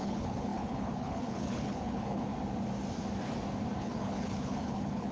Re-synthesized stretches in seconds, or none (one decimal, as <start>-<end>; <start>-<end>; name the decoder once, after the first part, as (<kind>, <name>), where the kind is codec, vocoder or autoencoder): 0.0-2.3 (codec, HILCodec); 3.8-5.1